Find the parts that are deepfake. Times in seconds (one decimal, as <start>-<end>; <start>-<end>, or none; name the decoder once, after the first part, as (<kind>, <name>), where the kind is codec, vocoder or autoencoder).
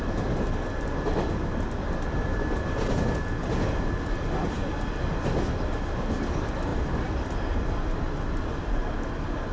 none